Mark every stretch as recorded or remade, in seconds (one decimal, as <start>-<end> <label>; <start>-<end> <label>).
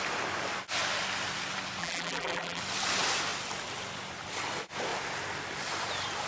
0.0-1.8 recorded; 1.8-2.6 remade; 2.6-6.3 recorded